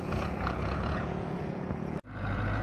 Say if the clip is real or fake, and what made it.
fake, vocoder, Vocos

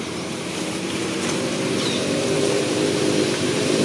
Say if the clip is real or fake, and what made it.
fake, vocoder, BigVGAN v2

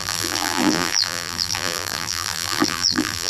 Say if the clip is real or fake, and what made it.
fake, vocoder, BigVGAN v2